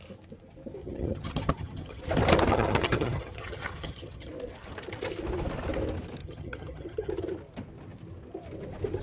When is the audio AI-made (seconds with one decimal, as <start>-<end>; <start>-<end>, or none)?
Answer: 0.8-2.0; 2.5-4.3; 6.2-7.1